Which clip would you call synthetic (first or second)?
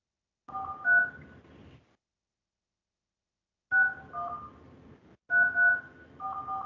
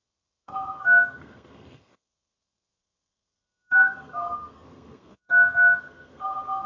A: second